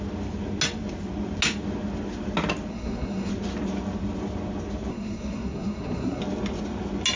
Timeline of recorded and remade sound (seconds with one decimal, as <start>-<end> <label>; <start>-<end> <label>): 0.0-2.7 recorded; 2.7-3.3 remade; 3.3-4.9 recorded; 4.9-6.2 remade; 6.2-7.2 recorded